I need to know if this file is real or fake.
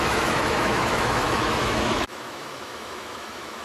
fake